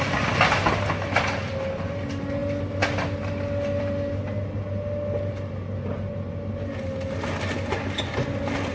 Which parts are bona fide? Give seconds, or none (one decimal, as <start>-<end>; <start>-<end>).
0.0-8.7